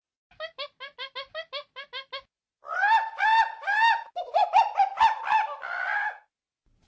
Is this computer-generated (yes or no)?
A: no